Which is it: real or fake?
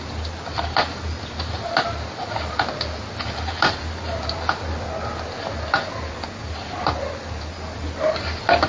real